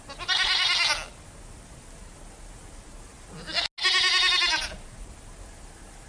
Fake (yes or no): no